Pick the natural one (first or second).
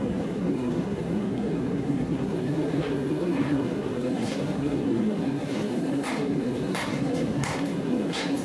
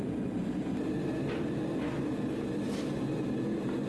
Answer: second